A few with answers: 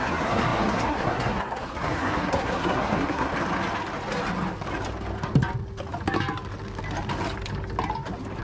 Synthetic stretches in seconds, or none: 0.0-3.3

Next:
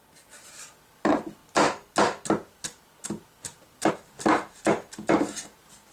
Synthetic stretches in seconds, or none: none

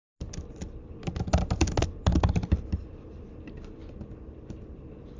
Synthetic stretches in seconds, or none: none

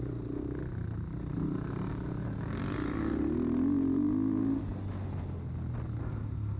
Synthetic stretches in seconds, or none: 6.0-6.6

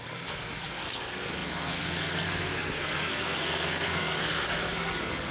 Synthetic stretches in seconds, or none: 0.0-5.3

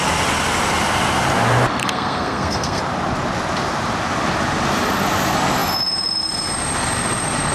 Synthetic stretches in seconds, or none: 1.8-2.8